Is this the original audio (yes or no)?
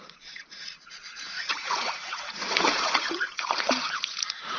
no